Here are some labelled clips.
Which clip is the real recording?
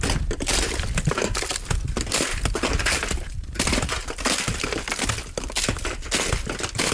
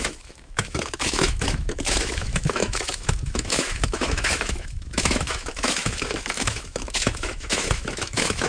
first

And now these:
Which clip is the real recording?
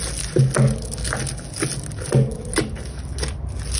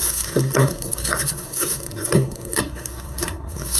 first